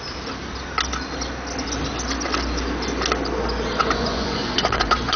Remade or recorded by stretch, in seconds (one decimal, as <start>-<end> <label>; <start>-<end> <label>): 0.0-3.8 recorded; 3.8-5.2 remade